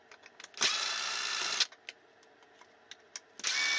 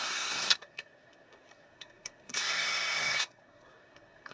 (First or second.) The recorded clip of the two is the first